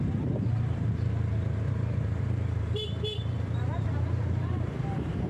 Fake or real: fake